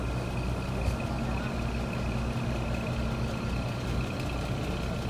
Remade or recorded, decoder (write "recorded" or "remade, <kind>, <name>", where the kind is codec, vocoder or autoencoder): recorded